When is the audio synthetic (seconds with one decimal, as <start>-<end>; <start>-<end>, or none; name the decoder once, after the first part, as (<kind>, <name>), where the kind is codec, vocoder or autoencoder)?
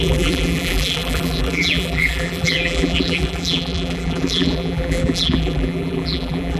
0.0-6.6 (vocoder, BigVGAN v2)